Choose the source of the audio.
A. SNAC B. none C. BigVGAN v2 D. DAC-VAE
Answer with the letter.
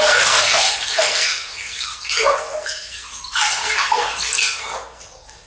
A